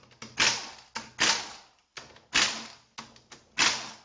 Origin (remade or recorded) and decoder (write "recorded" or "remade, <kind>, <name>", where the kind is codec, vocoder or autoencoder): recorded